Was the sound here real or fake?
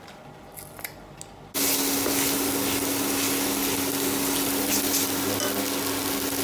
real